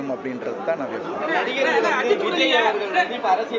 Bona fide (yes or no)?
yes